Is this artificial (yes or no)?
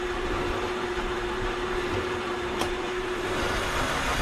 yes